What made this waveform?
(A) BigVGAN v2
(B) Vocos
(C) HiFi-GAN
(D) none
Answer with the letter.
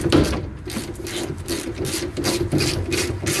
A